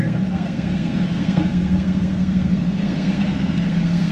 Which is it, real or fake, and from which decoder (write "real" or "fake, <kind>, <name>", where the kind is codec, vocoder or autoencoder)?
fake, codec, SNAC